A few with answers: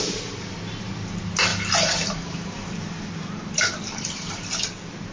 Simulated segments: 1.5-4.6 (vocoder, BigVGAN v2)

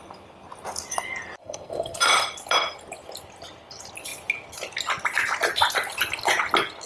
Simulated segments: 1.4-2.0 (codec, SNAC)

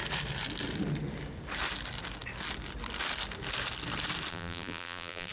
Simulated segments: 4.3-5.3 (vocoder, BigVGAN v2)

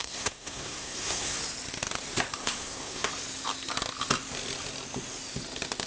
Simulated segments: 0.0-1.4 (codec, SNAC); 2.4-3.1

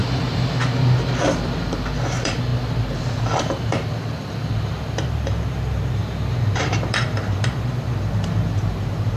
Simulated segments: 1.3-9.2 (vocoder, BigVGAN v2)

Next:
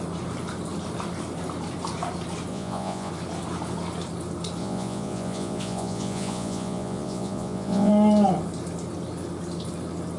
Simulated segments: 2.5-3.1 (vocoder, Vocos); 4.6-7.9